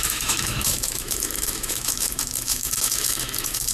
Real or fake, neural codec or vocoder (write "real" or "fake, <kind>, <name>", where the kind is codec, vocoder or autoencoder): fake, autoencoder, DAC-VAE